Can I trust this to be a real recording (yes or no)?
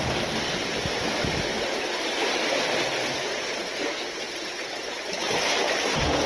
yes